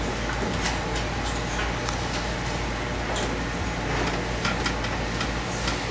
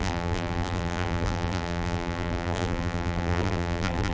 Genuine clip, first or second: first